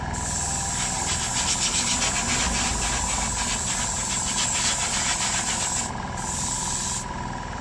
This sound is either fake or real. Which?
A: real